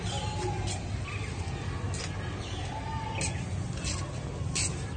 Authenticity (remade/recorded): recorded